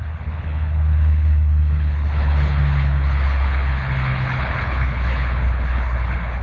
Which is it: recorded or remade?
remade